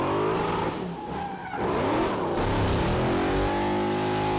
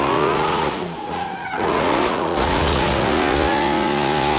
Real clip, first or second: first